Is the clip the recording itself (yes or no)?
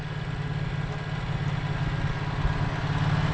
yes